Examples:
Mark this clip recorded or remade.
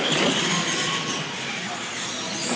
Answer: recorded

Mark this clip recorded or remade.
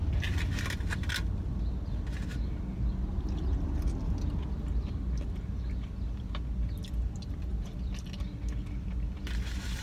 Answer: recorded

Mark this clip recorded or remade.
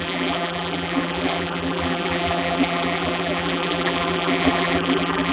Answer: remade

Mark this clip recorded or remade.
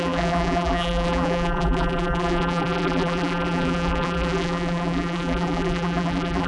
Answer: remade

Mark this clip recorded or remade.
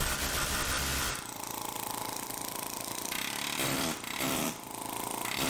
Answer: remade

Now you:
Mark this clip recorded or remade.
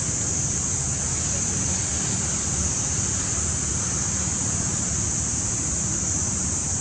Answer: remade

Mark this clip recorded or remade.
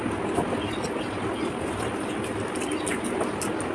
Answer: recorded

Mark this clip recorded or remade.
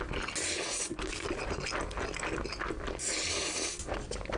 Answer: recorded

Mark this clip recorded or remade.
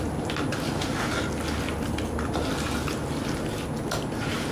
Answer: recorded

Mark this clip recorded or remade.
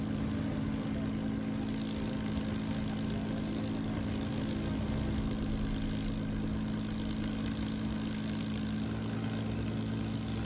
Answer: recorded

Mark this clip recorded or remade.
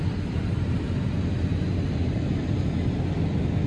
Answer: recorded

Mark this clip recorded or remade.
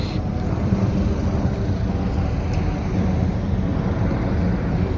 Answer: recorded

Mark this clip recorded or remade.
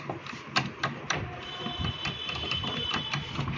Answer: remade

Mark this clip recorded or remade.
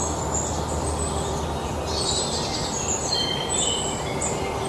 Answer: recorded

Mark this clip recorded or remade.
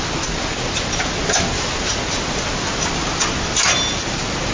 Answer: recorded